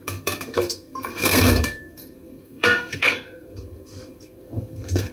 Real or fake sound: fake